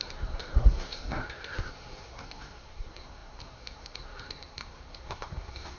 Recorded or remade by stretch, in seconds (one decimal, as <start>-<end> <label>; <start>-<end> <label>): 0.0-5.8 remade